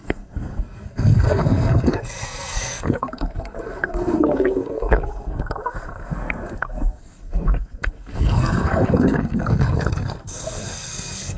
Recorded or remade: remade